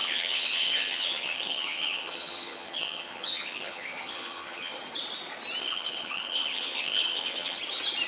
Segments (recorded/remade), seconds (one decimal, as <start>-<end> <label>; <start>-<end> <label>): 0.0-4.7 remade; 4.7-5.6 recorded; 5.6-7.6 remade; 7.6-8.1 recorded